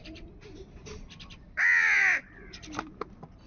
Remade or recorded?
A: remade